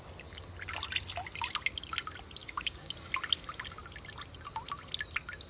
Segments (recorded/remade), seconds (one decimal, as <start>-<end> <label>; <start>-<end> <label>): 0.0-2.4 recorded; 2.4-2.9 remade; 2.9-5.5 recorded